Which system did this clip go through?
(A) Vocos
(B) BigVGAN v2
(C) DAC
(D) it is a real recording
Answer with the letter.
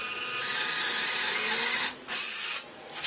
D